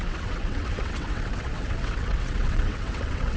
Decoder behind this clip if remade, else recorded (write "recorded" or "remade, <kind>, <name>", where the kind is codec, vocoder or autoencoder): remade, vocoder, WaveNeXt